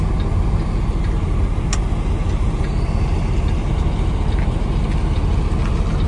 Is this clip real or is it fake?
real